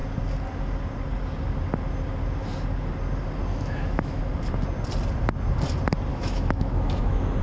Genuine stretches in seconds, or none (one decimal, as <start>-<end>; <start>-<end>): 0.0-3.5; 4.2-6.1